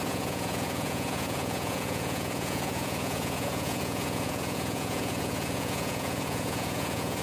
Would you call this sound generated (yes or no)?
yes